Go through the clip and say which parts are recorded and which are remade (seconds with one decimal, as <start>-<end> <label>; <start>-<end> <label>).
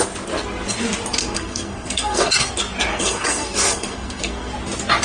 0.0-1.2 recorded; 1.2-2.5 remade; 2.5-2.9 recorded; 2.9-4.5 remade; 4.5-5.0 recorded